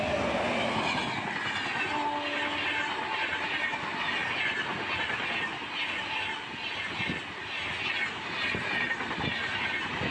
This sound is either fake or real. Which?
real